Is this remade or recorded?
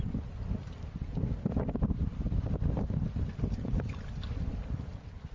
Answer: recorded